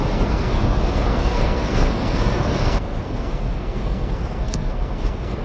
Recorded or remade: remade